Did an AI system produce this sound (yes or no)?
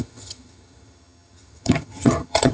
yes